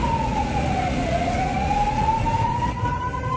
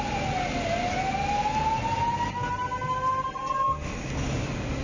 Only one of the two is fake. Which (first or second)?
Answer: first